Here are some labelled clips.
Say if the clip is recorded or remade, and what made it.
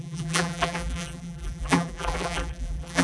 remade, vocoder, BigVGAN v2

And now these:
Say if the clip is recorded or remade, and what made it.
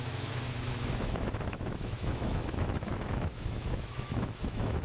remade, autoencoder, DAC-VAE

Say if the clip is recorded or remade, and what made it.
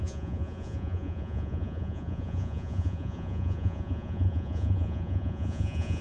remade, vocoder, Vocos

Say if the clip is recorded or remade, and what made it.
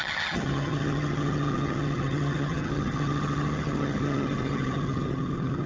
remade, vocoder, HiFi-GAN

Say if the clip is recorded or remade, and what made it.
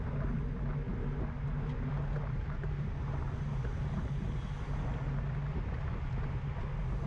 recorded